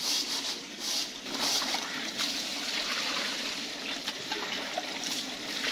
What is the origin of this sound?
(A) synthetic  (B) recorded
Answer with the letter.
A